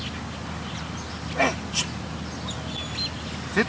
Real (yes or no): yes